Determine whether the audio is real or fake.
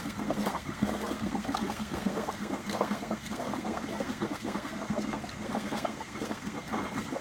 fake